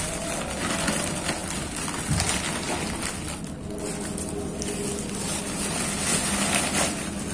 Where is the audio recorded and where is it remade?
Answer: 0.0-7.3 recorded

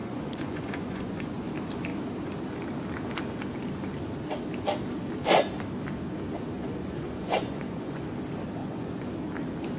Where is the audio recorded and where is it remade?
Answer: 0.0-1.5 remade; 1.5-6.8 recorded; 6.8-8.0 remade; 8.0-8.6 recorded; 8.6-9.1 remade; 9.1-9.8 recorded

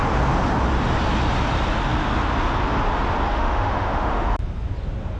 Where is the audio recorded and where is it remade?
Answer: 0.0-3.3 recorded; 3.3-4.3 remade; 4.3-5.2 recorded